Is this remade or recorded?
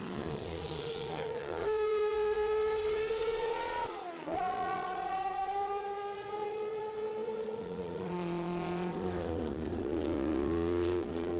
remade